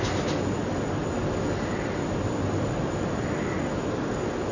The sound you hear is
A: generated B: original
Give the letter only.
B